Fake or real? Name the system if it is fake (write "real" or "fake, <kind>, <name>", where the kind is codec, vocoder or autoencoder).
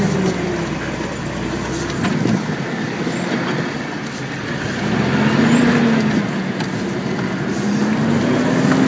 real